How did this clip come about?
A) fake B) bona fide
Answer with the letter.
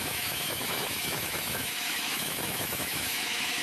A